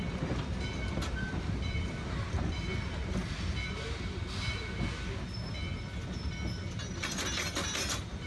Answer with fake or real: real